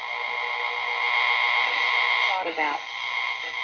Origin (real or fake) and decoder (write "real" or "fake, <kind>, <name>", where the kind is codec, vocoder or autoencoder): real